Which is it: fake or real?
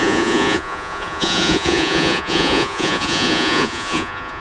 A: fake